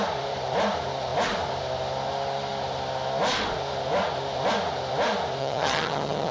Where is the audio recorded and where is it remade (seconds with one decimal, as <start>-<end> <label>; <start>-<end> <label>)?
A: 0.0-5.4 recorded; 5.4-6.3 remade